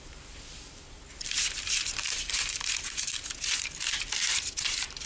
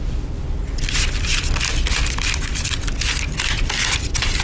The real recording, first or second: second